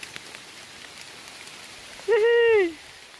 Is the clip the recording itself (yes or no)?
yes